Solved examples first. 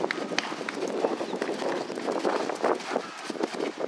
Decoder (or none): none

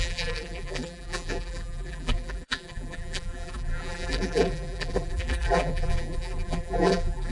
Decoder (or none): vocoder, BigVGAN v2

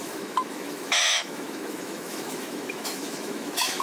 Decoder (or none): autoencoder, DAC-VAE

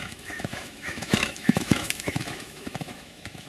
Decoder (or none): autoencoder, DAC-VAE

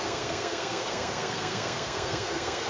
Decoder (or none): codec, SNAC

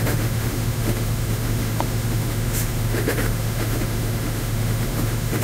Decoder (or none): autoencoder, DAC-VAE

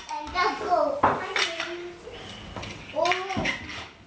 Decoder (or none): none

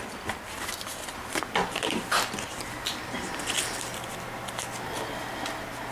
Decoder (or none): none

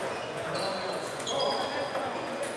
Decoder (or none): vocoder, Vocos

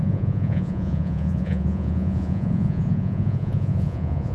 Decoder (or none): vocoder, Vocos